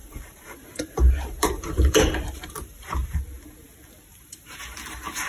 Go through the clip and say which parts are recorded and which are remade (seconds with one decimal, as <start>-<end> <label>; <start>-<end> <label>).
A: 0.0-3.2 remade; 3.2-4.1 recorded; 4.1-5.3 remade